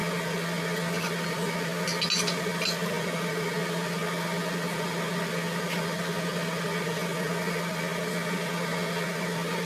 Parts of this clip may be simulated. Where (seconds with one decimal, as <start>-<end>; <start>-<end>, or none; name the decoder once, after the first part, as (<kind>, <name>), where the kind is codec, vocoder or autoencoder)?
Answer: none